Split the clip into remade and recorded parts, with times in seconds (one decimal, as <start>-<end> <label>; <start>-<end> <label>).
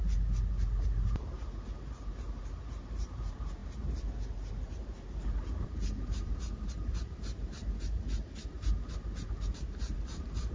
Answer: 0.0-0.6 recorded; 0.6-10.5 remade